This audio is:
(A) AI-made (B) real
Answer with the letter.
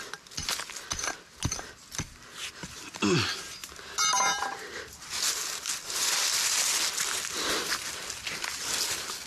B